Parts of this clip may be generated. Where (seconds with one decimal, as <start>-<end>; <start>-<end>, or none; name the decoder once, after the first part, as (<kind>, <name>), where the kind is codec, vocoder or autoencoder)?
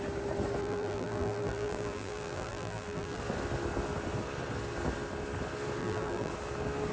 0.6-3.2 (vocoder, BigVGAN v2); 5.8-6.3